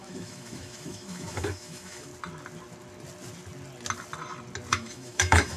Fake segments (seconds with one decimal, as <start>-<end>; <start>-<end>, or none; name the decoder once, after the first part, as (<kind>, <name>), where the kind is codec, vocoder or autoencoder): 0.0-2.1 (autoencoder, DAC-VAE); 4.7-5.6